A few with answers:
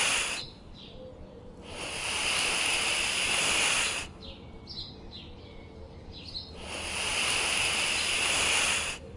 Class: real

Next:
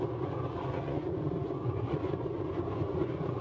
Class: fake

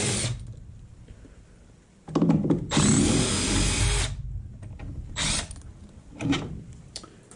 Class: fake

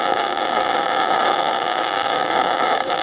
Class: fake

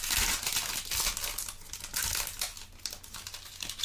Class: real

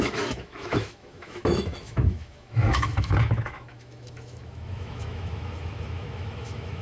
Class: fake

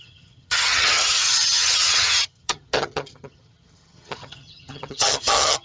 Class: fake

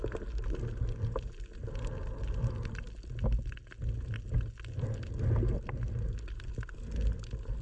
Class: real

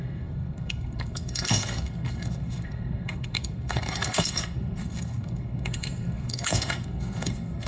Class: fake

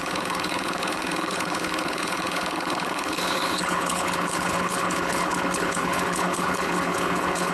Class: fake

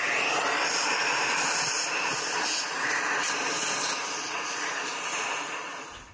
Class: real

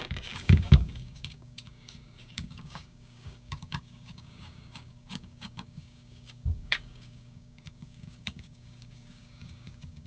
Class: fake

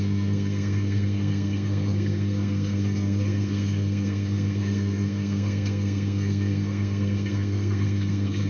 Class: fake